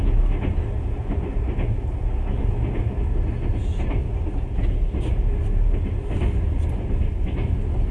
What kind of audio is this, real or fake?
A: real